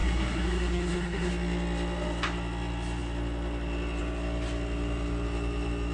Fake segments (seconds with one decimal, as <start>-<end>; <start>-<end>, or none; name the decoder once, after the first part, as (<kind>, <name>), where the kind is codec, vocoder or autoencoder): 0.0-1.3 (codec, SNAC)